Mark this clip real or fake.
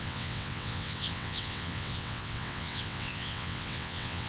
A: fake